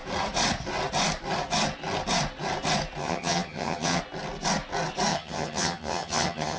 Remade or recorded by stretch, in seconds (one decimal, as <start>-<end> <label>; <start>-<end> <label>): 0.0-3.0 recorded; 3.0-4.0 remade; 4.0-5.1 recorded; 5.1-6.6 remade